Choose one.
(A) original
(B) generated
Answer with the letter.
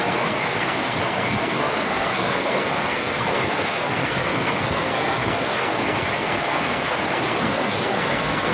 B